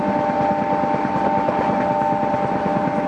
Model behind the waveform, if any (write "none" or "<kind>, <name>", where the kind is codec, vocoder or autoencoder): none